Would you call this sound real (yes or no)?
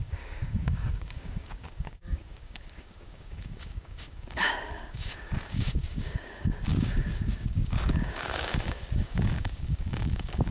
no